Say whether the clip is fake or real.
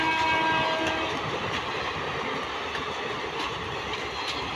real